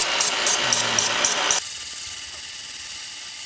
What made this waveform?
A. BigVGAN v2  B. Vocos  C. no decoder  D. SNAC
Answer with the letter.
C